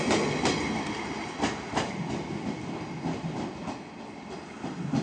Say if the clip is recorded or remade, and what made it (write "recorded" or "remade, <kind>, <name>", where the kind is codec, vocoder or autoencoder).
recorded